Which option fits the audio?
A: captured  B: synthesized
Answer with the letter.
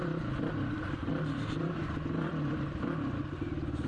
A